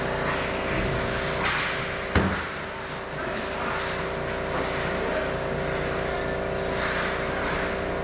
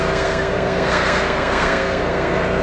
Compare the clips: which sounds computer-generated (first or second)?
second